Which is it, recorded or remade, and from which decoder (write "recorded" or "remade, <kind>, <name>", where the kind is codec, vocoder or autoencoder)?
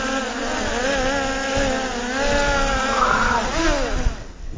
recorded